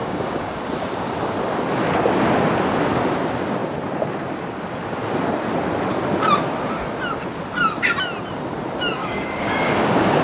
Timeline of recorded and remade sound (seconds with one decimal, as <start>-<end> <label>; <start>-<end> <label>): 0.0-0.6 remade; 0.6-9.0 recorded; 9.0-10.2 remade